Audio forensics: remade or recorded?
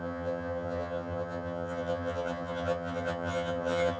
remade